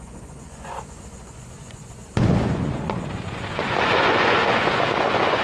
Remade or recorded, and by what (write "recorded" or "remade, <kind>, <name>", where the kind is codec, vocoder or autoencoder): remade, vocoder, Vocos